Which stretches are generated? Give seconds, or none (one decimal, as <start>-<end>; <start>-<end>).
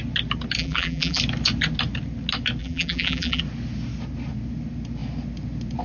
0.6-1.2; 2.6-3.4